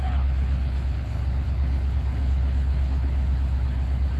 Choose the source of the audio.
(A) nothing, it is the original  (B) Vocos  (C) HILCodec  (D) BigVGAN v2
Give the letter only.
C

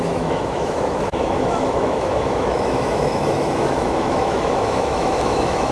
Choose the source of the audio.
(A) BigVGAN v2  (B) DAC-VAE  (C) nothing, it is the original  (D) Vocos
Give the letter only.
B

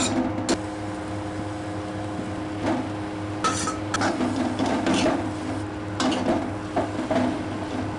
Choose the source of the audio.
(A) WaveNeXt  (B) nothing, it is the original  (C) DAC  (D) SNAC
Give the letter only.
B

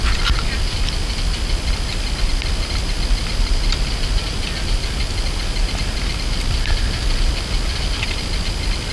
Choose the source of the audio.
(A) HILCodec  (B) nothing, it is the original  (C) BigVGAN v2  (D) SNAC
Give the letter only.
B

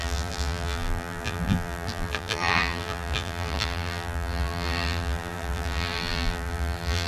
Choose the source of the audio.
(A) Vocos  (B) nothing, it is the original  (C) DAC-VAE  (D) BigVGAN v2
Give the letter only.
D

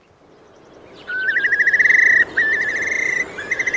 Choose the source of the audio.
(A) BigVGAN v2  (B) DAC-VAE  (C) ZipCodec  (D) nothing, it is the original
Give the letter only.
D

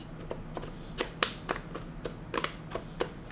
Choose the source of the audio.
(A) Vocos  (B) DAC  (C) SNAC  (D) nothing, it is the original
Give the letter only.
D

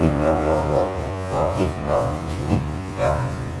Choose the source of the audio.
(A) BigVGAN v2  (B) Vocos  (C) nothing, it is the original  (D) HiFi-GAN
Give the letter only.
B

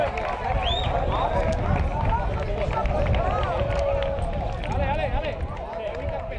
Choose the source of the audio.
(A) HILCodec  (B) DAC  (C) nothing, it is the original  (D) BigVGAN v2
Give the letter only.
C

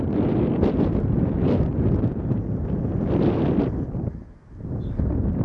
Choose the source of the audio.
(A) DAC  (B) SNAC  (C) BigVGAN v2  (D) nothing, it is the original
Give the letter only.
D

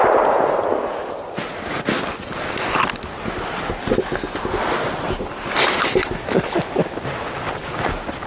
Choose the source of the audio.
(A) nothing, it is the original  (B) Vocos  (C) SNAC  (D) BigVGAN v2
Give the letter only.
A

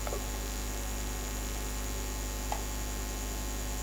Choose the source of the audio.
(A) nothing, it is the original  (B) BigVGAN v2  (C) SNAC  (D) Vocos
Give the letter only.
A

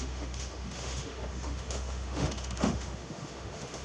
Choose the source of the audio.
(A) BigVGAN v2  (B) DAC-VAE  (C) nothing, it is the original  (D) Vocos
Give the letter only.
B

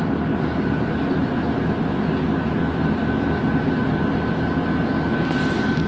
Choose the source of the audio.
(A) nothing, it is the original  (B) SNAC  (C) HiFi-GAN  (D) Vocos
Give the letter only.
A